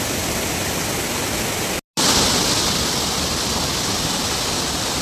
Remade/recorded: recorded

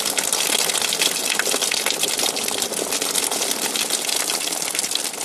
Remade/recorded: recorded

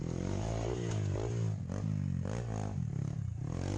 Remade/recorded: recorded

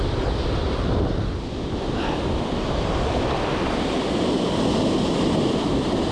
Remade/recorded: remade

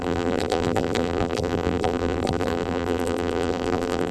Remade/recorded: remade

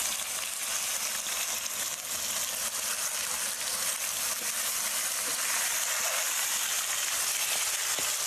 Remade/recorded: recorded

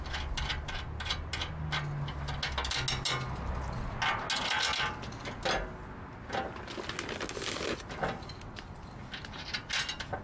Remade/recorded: recorded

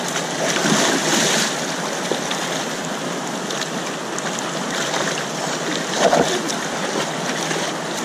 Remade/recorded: recorded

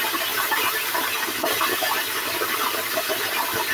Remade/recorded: remade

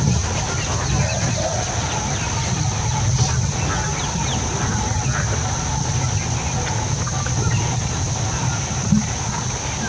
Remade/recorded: recorded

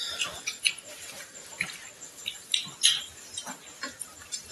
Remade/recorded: remade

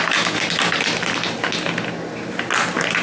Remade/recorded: recorded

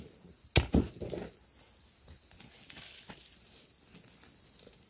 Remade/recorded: recorded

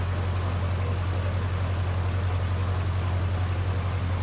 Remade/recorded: recorded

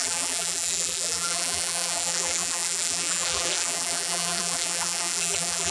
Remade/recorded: remade